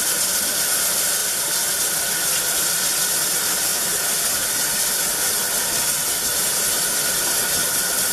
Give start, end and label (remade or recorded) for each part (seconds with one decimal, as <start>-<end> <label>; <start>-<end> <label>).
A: 0.0-8.1 recorded